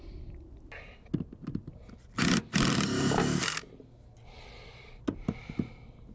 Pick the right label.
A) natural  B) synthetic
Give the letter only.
A